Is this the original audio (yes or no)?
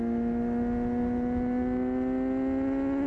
yes